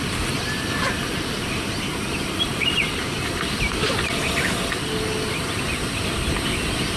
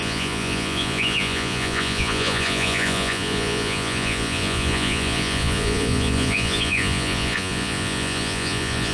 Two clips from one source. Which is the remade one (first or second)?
second